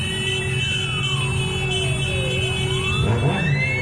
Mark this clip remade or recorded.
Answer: recorded